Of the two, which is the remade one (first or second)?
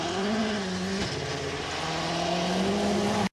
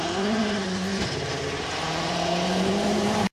second